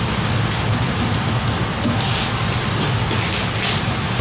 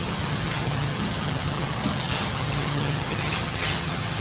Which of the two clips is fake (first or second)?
second